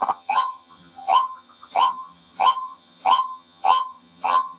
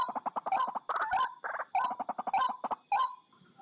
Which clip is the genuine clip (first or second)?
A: second